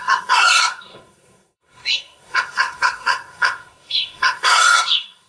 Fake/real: fake